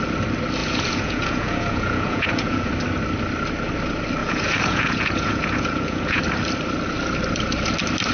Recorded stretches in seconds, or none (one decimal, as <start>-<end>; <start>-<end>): 0.0-0.6; 2.7-4.2; 6.2-8.1